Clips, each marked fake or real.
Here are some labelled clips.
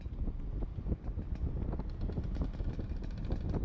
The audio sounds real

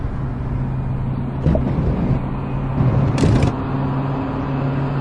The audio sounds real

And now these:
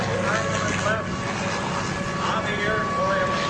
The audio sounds real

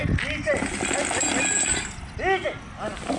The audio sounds real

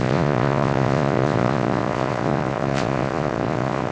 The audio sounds fake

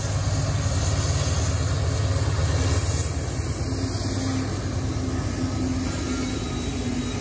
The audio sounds real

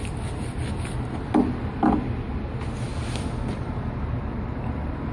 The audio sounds real